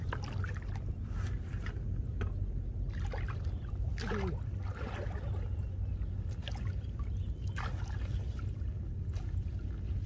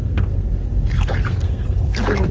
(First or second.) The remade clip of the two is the second